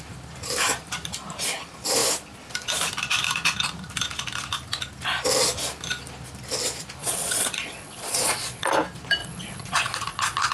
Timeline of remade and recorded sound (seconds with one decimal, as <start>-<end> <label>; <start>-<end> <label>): 0.0-7.0 recorded; 7.0-8.7 remade; 8.7-9.2 recorded; 9.2-10.5 remade